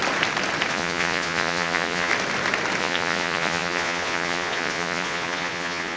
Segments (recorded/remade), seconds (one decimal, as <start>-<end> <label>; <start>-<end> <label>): 0.0-0.7 recorded; 0.7-2.1 remade; 2.1-2.8 recorded; 2.8-6.0 remade